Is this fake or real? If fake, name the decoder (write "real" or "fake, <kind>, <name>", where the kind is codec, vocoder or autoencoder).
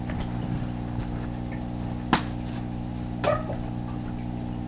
real